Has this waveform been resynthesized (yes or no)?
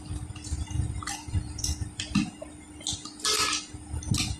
no